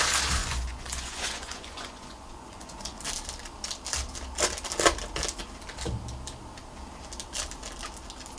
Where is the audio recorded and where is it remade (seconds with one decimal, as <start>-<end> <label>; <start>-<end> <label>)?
0.0-0.4 recorded; 0.4-3.0 remade; 3.0-8.4 recorded